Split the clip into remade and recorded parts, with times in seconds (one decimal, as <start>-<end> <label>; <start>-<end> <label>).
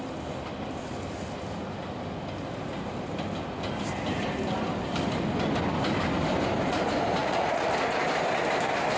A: 0.0-7.2 recorded; 7.2-7.7 remade; 7.7-9.0 recorded